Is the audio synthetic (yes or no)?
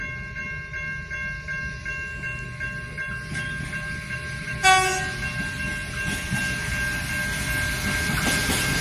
no